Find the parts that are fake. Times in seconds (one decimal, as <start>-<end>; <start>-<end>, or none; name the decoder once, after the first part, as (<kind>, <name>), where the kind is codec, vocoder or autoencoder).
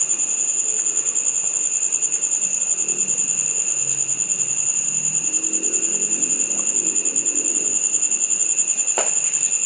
none